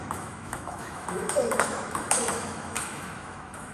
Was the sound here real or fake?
fake